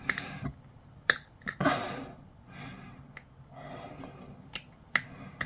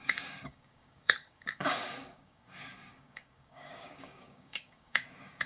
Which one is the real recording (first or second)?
first